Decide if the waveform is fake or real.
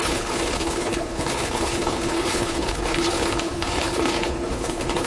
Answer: fake